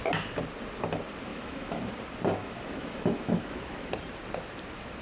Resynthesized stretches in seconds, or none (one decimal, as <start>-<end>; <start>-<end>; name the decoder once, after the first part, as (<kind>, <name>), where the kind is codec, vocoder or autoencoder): 1.3-1.8 (autoencoder, DAC-VAE); 2.4-3.9